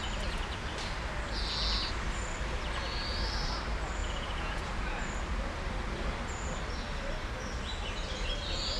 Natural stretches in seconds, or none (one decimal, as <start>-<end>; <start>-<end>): 0.0-4.0; 5.1-8.8